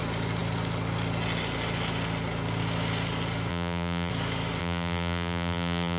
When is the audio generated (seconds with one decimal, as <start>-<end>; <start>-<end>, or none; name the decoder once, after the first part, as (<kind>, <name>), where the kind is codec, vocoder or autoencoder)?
3.5-4.1 (vocoder, BigVGAN v2); 4.6-6.0